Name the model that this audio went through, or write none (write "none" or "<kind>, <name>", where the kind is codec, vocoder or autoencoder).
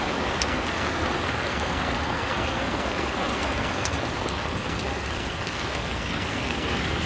codec, SNAC